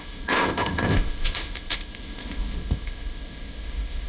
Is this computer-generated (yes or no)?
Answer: yes